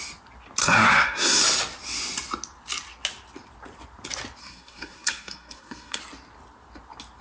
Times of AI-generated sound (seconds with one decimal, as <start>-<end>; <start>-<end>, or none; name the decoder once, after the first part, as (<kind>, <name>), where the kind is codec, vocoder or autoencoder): 0.6-1.4 (codec, SNAC); 4.4-6.0